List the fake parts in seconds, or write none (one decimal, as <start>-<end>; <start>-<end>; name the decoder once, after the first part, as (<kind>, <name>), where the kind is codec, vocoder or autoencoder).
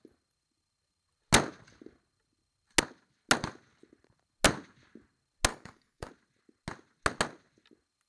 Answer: 5.5-6.1 (codec, DAC)